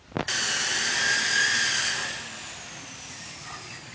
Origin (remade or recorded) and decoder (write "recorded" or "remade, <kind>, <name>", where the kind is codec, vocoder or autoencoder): recorded